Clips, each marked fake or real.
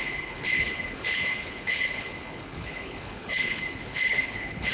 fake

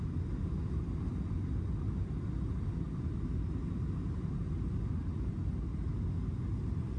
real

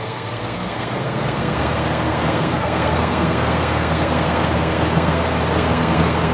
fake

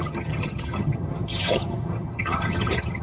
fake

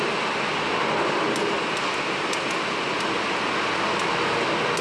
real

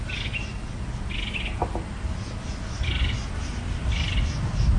real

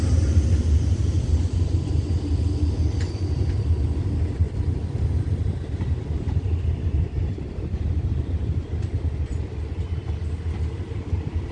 real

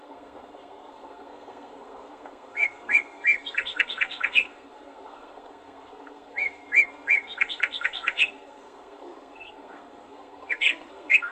fake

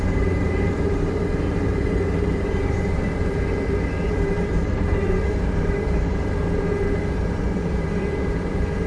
fake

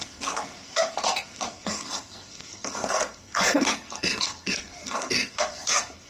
fake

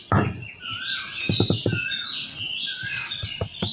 real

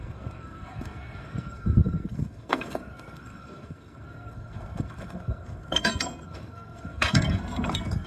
fake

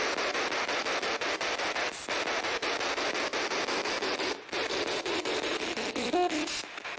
real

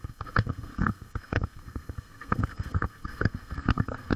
fake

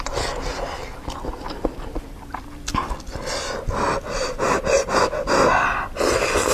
real